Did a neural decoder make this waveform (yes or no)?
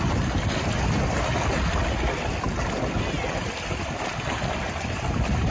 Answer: no